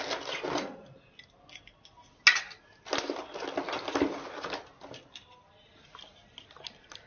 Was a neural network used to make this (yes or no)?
no